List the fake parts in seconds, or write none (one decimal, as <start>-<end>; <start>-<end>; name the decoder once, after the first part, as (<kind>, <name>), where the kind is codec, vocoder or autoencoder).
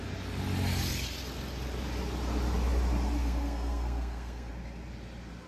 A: 3.2-4.5 (codec, SNAC)